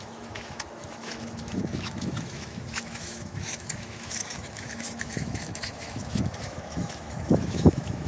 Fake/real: fake